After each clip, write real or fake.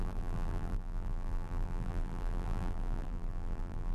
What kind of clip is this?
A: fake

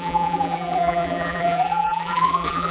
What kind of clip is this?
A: fake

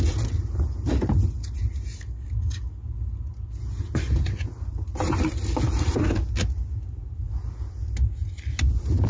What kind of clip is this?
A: real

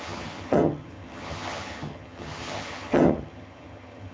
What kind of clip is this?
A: fake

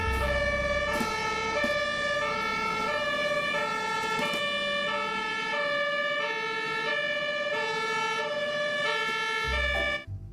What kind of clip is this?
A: real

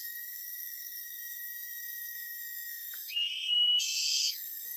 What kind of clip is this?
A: fake